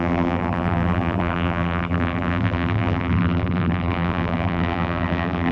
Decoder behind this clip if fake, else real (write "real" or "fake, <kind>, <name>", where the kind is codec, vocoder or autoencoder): fake, vocoder, BigVGAN v2